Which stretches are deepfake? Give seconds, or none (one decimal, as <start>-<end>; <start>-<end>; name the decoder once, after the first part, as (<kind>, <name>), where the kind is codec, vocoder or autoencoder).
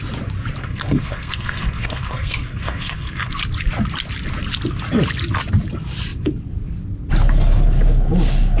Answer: 0.6-3.3 (codec, SNAC)